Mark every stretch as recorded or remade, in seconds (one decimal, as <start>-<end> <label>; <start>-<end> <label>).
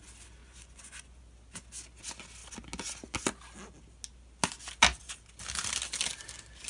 0.0-0.4 recorded; 0.4-1.2 remade; 1.2-6.7 recorded